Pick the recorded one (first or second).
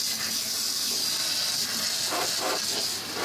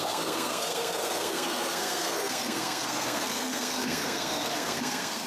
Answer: first